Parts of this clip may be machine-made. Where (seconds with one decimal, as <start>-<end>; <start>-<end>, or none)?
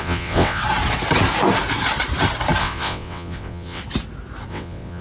0.0-0.6; 2.6-3.8; 4.5-5.0